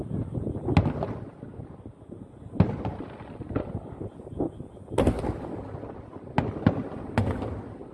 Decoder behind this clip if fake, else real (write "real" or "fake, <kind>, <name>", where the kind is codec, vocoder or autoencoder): real